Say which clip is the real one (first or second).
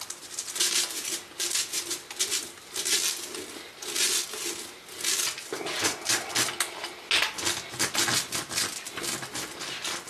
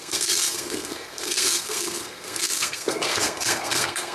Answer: first